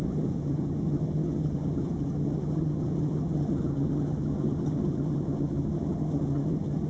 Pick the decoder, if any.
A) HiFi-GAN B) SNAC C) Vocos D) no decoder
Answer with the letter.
A